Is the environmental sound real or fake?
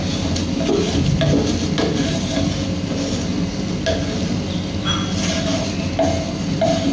real